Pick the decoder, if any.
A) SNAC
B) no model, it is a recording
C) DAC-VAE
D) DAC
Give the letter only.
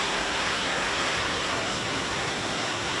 A